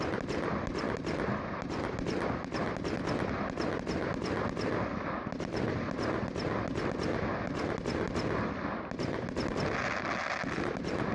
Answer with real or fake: real